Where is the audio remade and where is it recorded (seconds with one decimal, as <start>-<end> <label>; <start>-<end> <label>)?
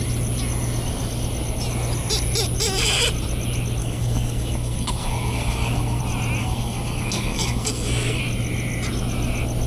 0.0-3.8 recorded; 3.8-6.0 remade; 6.0-6.4 recorded; 6.4-8.2 remade; 8.2-9.7 recorded